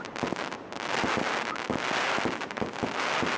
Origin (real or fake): real